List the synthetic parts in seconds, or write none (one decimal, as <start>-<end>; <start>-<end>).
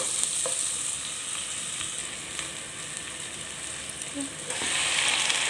none